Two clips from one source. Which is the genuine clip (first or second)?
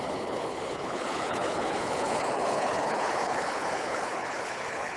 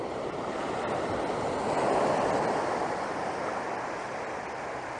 second